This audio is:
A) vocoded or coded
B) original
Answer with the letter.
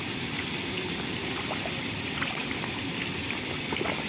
B